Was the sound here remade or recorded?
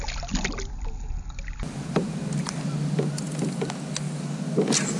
recorded